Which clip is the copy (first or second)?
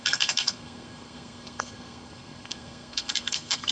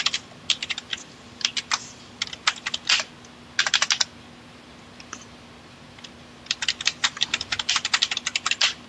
first